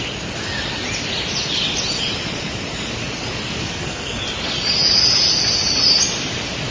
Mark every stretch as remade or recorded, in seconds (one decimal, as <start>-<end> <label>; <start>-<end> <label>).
0.0-3.6 recorded; 3.6-4.2 remade; 4.2-6.7 recorded